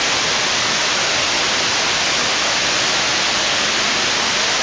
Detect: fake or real real